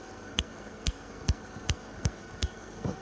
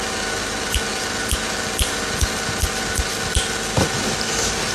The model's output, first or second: first